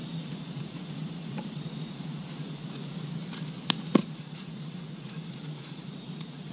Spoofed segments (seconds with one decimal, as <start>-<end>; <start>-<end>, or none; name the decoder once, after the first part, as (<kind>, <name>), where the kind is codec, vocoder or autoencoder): 0.0-3.1 (vocoder, Vocos); 4.0-6.5